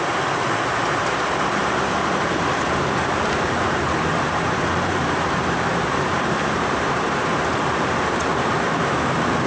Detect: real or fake fake